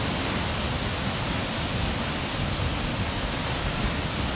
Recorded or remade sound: recorded